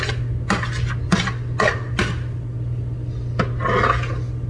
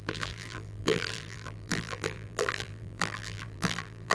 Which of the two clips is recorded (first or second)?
first